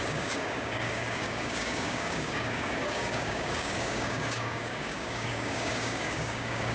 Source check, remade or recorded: remade